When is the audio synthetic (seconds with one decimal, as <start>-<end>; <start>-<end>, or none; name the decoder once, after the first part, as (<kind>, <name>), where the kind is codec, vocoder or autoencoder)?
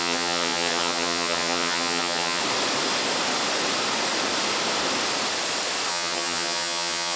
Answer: 0.0-2.4 (vocoder, HiFi-GAN); 5.9-7.2